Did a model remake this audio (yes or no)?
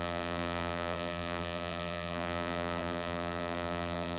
yes